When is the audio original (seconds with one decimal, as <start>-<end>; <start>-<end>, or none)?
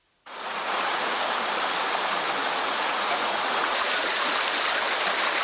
1.2-2.4; 4.3-5.4